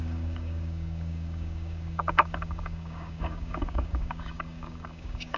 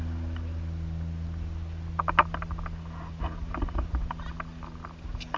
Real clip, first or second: second